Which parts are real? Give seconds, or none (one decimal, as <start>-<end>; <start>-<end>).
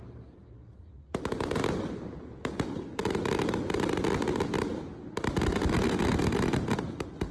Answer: 0.0-7.3